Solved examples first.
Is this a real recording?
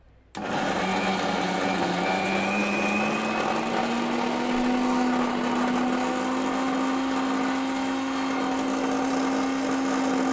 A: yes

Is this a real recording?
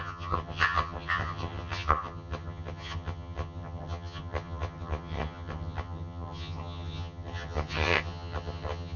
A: no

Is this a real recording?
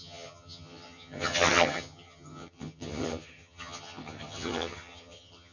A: no